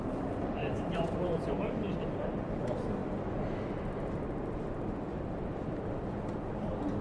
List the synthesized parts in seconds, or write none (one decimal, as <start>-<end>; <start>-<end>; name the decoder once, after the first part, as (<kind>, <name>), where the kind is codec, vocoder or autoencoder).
0.6-2.0 (vocoder, BigVGAN v2)